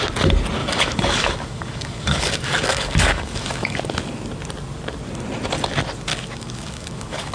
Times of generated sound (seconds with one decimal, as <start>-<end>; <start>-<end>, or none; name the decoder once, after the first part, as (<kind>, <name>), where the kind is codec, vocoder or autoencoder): 0.6-3.8 (codec, DAC); 6.1-7.3